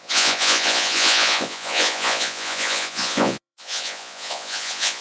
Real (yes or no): no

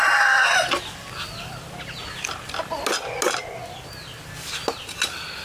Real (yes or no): yes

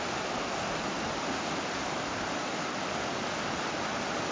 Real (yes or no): yes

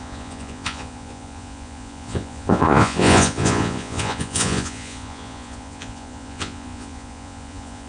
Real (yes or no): no